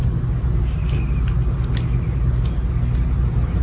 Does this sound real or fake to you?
real